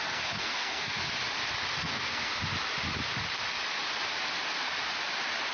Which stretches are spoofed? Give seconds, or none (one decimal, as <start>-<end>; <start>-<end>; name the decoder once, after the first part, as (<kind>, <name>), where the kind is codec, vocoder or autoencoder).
0.0-1.0 (codec, SNAC); 1.8-2.3